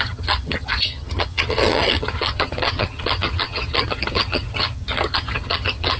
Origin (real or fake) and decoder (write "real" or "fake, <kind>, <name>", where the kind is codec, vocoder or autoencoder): fake, vocoder, HiFi-GAN